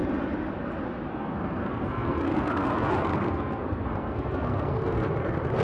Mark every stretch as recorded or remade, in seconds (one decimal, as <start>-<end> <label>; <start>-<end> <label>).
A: 0.0-1.1 recorded; 1.1-5.6 remade